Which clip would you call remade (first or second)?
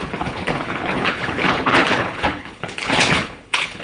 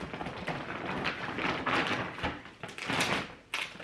first